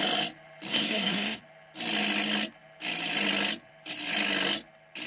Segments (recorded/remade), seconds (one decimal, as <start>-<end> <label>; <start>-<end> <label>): 0.0-0.7 recorded; 0.7-1.4 remade; 1.4-5.1 recorded